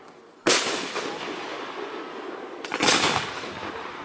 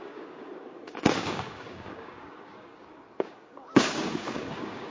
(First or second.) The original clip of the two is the first